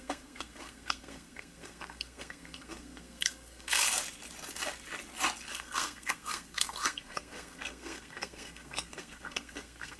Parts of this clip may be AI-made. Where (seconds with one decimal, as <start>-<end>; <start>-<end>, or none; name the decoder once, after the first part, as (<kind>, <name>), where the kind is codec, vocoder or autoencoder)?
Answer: 0.0-3.9 (codec, SNAC); 5.5-10.0